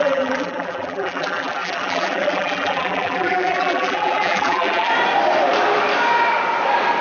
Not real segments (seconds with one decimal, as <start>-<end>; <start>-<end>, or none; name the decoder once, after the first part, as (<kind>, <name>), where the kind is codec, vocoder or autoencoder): 0.0-4.9 (vocoder, BigVGAN v2)

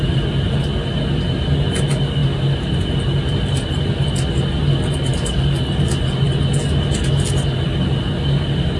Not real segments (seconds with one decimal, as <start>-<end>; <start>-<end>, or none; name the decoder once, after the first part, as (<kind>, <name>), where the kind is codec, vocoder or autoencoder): none